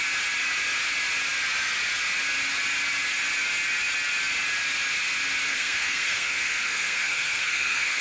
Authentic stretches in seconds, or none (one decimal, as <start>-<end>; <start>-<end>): 0.0-5.5